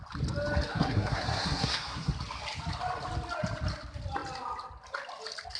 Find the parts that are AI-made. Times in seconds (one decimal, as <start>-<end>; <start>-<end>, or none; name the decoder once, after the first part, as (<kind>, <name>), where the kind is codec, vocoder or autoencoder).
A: 0.7-2.1 (codec, SNAC)